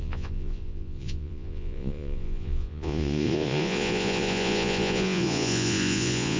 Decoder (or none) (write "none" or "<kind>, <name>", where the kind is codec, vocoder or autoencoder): vocoder, Vocos